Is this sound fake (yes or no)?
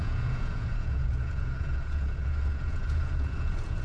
yes